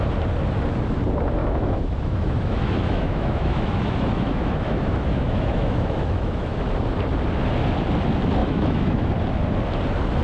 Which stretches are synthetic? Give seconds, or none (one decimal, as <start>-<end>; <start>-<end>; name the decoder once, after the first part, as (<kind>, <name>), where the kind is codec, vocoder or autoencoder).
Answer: 1.4-6.6 (autoencoder, DAC-VAE); 8.4-9.1